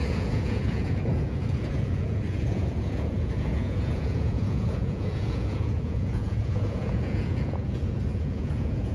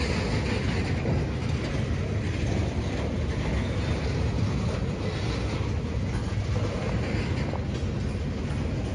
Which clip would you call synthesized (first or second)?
first